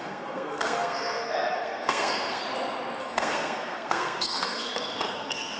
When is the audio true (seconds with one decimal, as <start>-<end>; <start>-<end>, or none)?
2.4-3.0